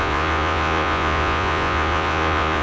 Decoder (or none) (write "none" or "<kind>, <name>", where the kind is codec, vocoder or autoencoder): vocoder, Vocos